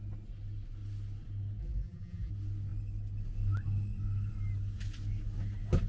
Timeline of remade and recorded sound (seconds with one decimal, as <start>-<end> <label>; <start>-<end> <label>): 0.0-1.6 recorded; 1.6-2.3 remade; 2.3-5.9 recorded